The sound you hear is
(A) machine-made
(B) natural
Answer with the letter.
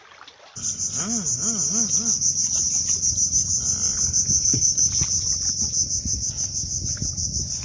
B